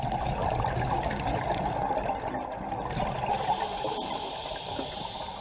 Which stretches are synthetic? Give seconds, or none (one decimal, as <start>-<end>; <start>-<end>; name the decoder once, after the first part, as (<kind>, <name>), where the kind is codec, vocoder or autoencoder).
0.0-0.4 (vocoder, BigVGAN v2); 3.3-5.4

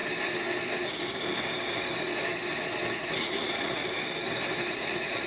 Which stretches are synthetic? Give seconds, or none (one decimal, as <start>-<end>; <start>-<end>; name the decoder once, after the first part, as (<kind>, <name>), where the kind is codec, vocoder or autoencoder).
3.2-3.8 (vocoder, Vocos); 4.7-5.3

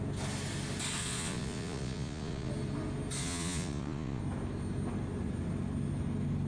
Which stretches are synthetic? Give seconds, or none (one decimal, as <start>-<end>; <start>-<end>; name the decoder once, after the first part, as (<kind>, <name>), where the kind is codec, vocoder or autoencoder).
1.0-2.5 (vocoder, Vocos); 3.2-4.2

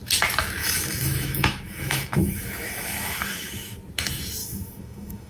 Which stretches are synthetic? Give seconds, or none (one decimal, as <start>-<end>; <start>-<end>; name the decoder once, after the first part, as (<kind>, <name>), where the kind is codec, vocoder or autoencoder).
0.6-3.8 (autoencoder, DAC-VAE); 4.4-5.3

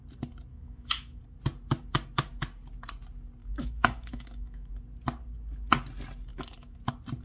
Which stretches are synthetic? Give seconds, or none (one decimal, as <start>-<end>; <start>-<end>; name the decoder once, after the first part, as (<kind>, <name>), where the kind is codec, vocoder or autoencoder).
0.5-1.2 (autoencoder, DAC-VAE); 3.4-4.7; 6.3-6.8

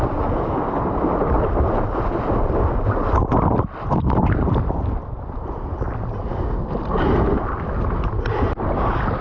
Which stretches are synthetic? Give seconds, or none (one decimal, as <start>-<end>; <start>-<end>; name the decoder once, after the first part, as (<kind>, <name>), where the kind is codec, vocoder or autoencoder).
none

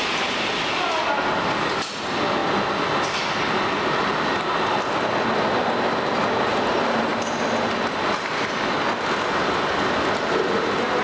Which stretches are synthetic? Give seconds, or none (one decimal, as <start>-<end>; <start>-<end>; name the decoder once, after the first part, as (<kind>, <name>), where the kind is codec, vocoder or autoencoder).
none

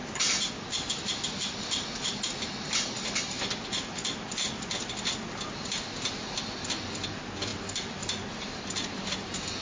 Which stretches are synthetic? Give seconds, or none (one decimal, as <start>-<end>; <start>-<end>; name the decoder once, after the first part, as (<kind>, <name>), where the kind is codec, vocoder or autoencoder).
none